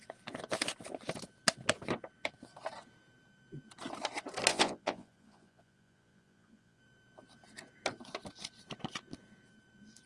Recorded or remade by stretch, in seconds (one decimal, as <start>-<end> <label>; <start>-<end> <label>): 0.0-4.5 recorded; 4.5-6.8 remade; 6.8-10.1 recorded